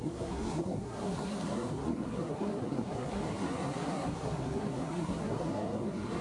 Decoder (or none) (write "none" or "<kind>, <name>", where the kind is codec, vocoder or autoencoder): codec, SNAC